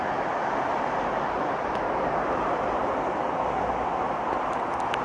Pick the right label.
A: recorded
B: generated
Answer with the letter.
A